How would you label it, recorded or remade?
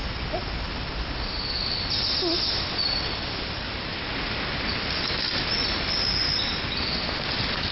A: recorded